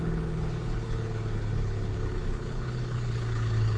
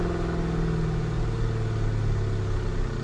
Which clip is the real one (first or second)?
second